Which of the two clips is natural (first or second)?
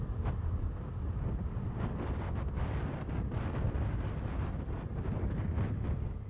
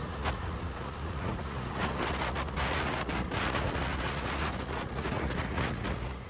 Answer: first